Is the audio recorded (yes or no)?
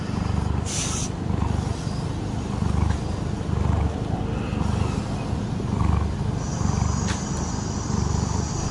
yes